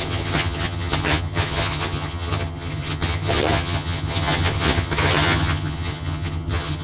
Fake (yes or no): yes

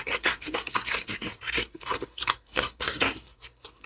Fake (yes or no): yes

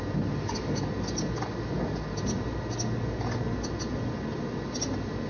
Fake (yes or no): no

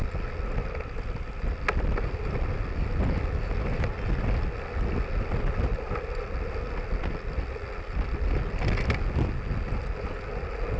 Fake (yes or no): no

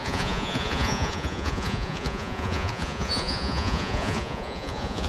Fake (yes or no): yes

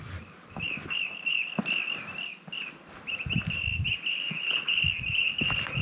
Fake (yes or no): no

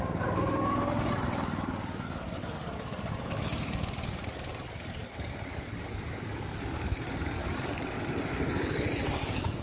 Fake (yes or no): yes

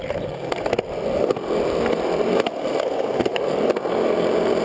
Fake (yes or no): no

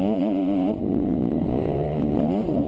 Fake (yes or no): yes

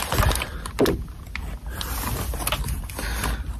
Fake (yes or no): no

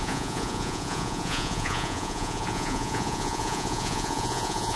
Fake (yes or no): yes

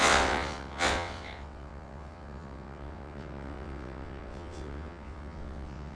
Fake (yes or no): yes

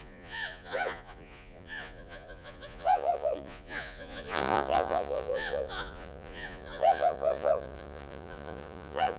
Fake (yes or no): yes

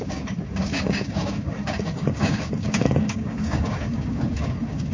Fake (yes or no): yes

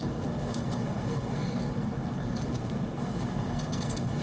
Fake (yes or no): yes